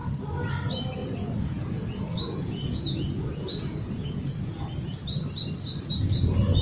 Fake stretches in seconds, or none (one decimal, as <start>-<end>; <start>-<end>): 1.0-4.6